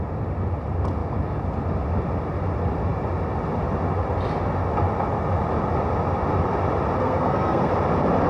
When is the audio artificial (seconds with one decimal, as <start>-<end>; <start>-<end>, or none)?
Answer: 7.0-7.7